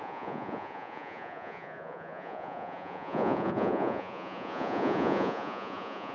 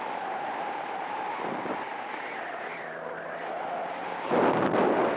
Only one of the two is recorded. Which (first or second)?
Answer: second